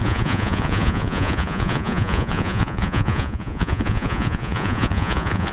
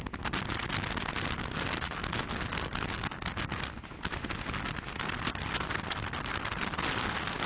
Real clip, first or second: second